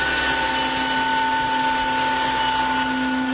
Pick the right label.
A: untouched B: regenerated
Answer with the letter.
A